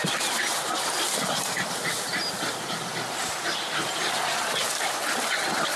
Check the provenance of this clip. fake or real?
real